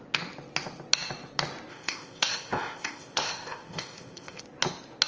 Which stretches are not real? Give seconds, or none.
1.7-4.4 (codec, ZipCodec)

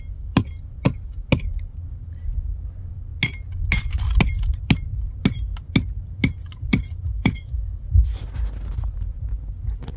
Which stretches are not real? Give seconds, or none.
7.1-7.8 (autoencoder, DAC-VAE)

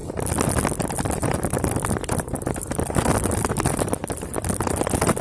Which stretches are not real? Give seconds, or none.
1.2-4.3 (vocoder, BigVGAN v2)

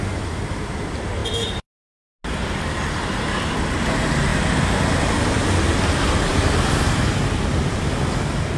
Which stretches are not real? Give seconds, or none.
6.3-7.0 (vocoder, BigVGAN v2)

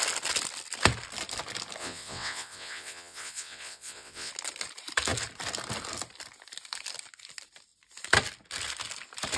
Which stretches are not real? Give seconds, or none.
1.8-4.3 (vocoder, WaveNeXt)